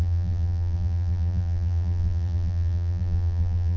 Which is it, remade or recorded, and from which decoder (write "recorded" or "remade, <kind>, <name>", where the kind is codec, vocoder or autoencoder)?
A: remade, vocoder, BigVGAN v2